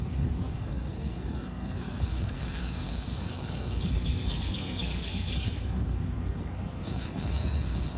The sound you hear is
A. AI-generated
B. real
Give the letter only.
A